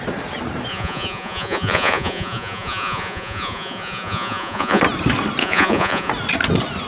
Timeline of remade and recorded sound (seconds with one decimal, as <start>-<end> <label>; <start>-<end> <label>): 0.0-0.7 recorded; 0.7-4.8 remade; 4.8-5.4 recorded; 5.4-6.1 remade; 6.1-6.9 recorded